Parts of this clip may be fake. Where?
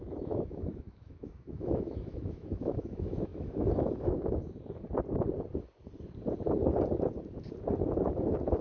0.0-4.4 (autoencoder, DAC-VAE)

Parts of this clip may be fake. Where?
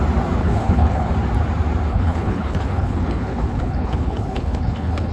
0.4-1.1 (codec, HILCodec); 1.9-5.1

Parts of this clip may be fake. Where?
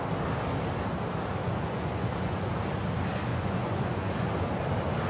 1.4-2.5 (vocoder, Vocos); 3.3-4.3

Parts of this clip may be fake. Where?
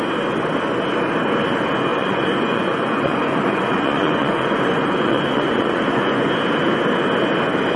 1.9-6.3 (vocoder, Vocos)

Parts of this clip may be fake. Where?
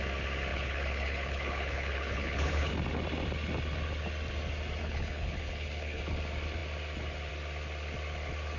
0.5-2.7 (codec, HILCodec); 4.8-6.0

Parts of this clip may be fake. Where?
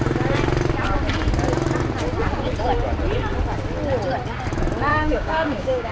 4.9-5.9 (codec, DAC)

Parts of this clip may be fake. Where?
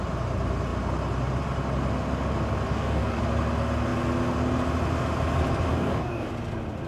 2.7-3.2 (codec, DAC); 5.7-6.3